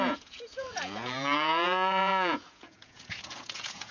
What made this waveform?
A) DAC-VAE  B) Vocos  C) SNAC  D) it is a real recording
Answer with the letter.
B